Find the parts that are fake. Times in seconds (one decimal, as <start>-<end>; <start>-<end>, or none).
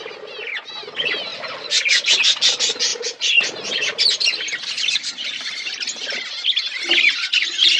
none